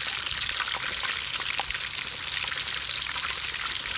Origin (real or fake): real